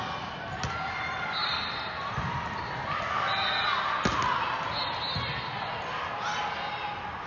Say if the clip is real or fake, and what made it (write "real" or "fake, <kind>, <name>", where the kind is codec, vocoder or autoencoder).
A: real